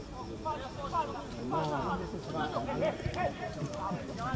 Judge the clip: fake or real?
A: fake